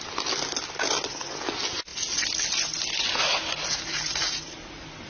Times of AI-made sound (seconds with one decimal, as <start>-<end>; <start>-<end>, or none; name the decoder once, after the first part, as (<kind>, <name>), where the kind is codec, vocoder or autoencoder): none